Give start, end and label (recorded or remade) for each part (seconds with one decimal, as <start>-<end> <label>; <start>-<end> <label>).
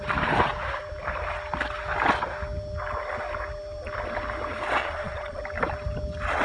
0.0-4.8 recorded; 4.8-5.4 remade; 5.4-6.4 recorded